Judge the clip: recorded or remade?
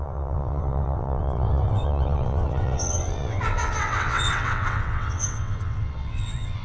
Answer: remade